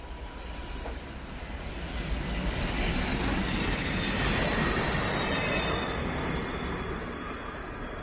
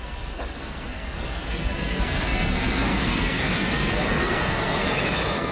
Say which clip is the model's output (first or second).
second